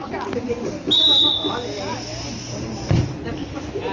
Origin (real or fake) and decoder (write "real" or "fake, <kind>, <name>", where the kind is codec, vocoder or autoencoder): real